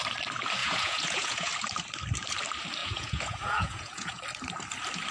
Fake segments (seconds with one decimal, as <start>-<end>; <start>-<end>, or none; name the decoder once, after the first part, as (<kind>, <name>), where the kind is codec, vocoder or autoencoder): 0.6-1.5 (vocoder, Vocos); 2.8-4.2